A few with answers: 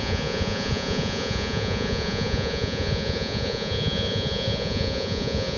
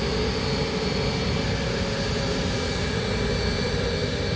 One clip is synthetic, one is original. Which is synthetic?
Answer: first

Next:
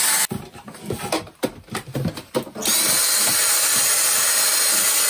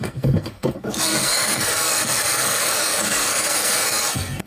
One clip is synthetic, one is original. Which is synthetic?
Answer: second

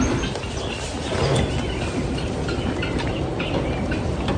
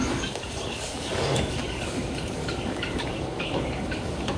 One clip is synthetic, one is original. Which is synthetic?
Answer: second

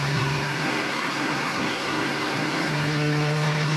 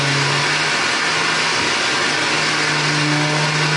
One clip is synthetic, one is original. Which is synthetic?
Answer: first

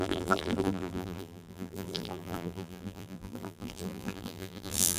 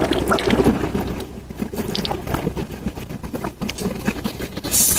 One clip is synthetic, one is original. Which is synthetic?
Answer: first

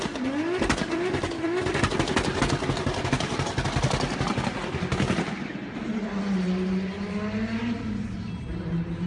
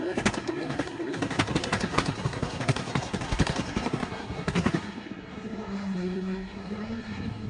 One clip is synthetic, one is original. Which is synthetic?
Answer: second